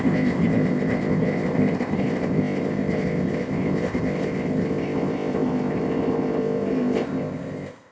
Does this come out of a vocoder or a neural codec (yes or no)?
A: yes